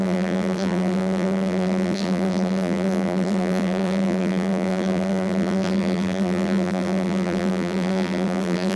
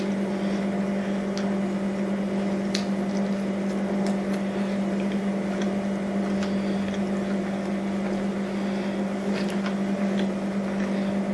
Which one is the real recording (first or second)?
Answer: second